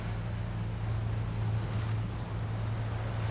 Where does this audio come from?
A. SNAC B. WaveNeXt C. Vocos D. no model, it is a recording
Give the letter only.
D